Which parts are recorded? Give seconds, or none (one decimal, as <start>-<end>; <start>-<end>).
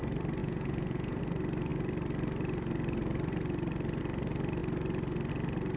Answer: 0.0-0.4; 1.2-5.8